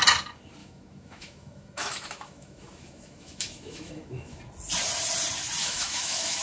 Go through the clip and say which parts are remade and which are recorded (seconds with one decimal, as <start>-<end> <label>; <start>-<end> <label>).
0.0-0.6 recorded; 0.6-4.4 remade; 4.4-5.6 recorded; 5.6-6.4 remade